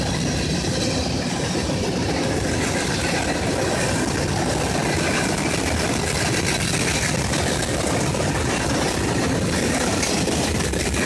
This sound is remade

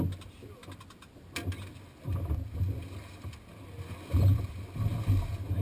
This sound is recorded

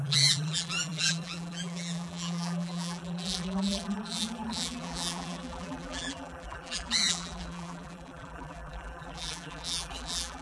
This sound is remade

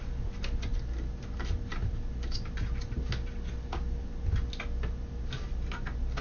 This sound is recorded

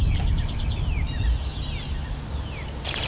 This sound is recorded